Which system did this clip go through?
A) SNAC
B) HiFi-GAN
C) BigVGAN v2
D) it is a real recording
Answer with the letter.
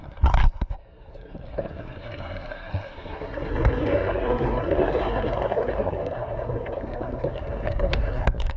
A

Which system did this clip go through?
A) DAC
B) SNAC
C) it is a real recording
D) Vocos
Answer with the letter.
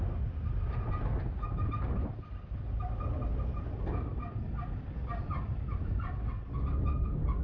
C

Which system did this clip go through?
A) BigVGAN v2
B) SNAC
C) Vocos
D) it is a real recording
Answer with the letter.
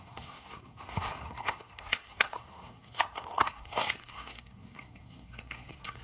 B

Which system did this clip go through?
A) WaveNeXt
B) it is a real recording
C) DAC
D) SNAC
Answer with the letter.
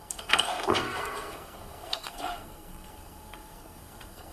D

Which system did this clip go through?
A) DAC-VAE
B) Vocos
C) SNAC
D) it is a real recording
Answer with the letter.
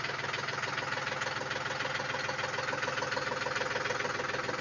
D